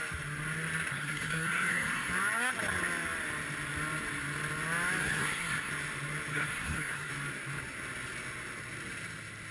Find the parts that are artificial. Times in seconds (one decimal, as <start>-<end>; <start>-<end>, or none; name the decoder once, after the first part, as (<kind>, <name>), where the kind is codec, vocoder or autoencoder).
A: 0.9-2.1 (codec, SNAC); 5.0-5.7; 6.3-7.1